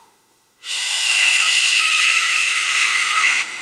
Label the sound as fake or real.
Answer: fake